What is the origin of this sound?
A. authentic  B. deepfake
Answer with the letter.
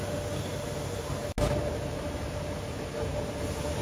A